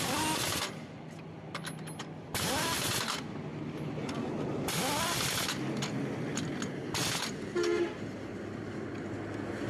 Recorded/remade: recorded